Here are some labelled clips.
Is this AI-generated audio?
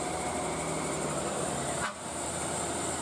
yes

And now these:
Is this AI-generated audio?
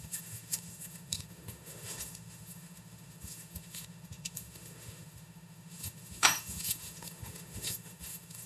yes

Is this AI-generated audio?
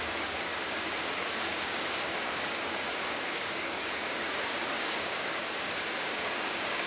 yes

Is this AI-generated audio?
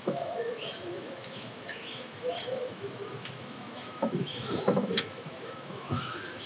yes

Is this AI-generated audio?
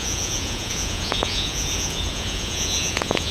yes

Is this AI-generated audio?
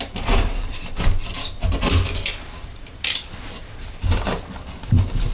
no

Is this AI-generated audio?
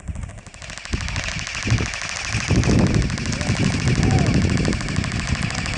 no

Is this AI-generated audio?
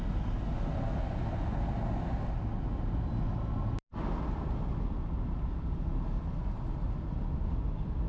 no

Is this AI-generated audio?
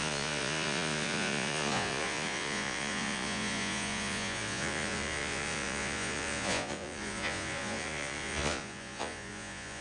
yes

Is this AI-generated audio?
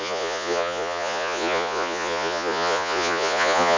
yes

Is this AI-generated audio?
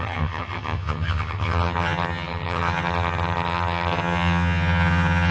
yes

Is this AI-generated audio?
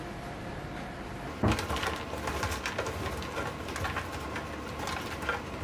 no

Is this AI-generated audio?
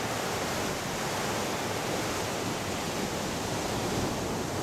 no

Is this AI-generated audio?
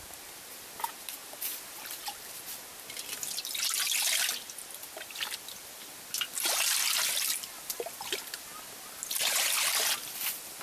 no